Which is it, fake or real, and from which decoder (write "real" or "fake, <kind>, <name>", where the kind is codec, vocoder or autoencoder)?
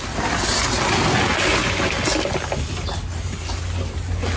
real